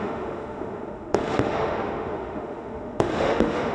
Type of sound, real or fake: fake